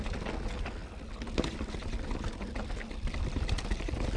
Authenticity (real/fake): real